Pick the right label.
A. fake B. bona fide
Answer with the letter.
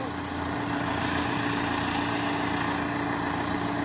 B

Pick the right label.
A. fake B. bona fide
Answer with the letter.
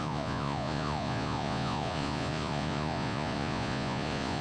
A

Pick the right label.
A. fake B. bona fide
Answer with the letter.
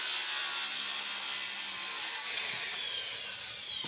B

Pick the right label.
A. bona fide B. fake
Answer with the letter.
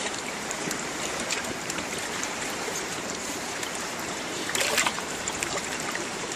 B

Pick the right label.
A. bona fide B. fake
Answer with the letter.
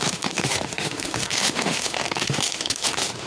B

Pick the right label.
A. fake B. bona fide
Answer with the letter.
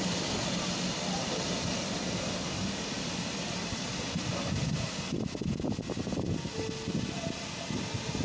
B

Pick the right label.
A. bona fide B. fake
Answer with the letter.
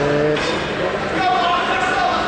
A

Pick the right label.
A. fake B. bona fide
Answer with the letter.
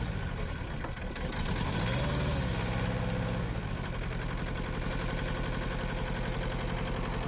B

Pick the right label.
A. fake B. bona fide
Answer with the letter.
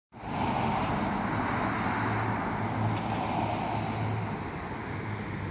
B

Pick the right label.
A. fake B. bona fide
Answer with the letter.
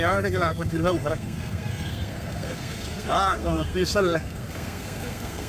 A